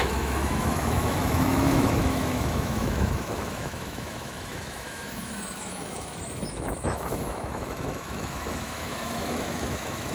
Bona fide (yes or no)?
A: no